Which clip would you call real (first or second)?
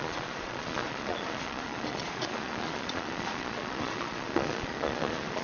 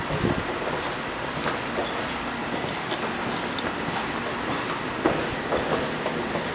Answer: second